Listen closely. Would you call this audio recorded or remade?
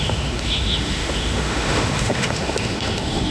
remade